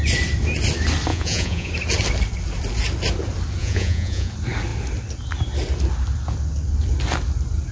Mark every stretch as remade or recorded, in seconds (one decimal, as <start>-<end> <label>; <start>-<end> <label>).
0.0-1.1 recorded; 1.1-1.7 remade; 1.7-3.6 recorded; 3.6-4.3 remade; 4.3-7.7 recorded